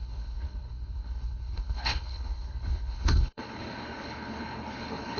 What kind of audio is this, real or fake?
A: fake